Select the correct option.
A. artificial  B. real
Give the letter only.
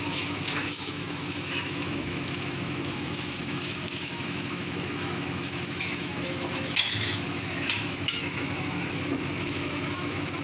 A